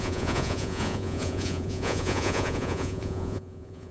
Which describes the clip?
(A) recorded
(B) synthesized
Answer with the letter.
B